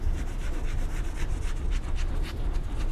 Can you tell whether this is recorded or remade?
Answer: remade